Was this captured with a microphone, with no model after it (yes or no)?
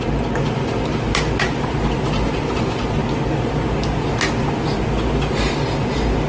yes